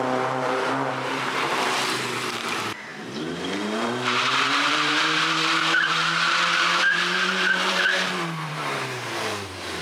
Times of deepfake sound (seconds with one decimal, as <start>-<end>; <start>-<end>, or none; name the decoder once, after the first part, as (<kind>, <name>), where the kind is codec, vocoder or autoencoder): 0.0-9.8 (vocoder, BigVGAN v2)